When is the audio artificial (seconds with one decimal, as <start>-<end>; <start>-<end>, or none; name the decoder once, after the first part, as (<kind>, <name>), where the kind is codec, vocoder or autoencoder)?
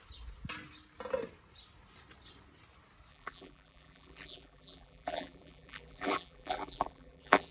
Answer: 3.1-7.5 (vocoder, BigVGAN v2)